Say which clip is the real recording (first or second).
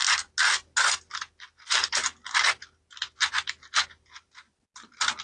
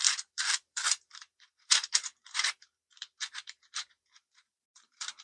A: first